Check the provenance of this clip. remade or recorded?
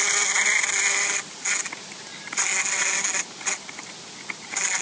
recorded